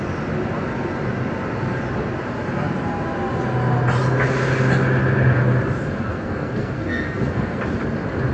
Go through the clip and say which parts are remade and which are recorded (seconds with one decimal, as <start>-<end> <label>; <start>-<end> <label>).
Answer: 0.0-6.1 recorded; 6.1-7.6 remade; 7.6-8.3 recorded